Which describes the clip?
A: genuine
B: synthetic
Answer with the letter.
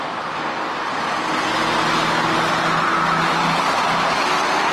A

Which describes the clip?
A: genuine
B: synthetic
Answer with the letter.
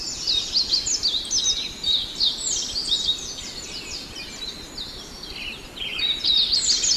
A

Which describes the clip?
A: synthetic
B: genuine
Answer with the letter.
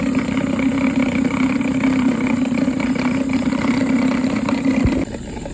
B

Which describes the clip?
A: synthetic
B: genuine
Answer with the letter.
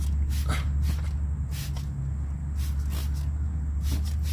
B